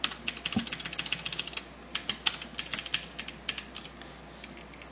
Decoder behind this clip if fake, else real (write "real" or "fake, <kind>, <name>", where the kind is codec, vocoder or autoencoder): real